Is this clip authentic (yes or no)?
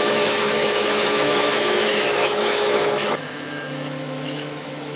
no